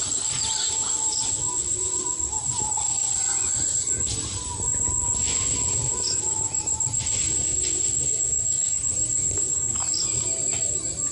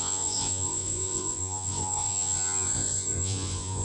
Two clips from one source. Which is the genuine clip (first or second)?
first